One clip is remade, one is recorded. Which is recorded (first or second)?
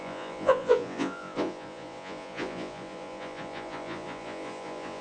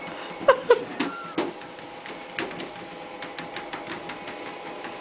second